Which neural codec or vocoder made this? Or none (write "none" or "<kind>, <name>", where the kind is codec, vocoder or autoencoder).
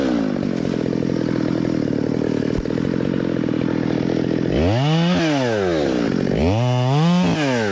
none